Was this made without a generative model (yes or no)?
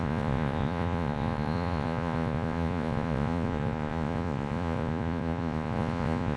no